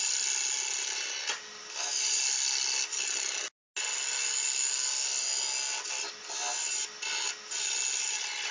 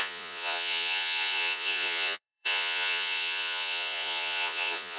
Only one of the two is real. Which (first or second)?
first